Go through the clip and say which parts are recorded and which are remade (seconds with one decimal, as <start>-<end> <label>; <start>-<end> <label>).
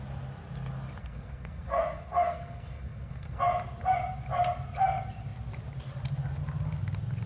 0.0-1.0 recorded; 1.0-3.4 remade; 3.4-7.3 recorded